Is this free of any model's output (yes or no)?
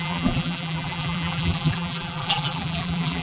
no